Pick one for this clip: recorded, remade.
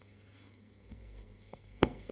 remade